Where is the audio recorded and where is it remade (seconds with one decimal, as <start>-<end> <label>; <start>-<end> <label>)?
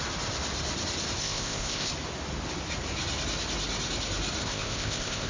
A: 0.0-1.2 recorded; 1.2-1.9 remade; 1.9-4.4 recorded; 4.4-5.3 remade